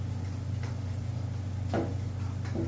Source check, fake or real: real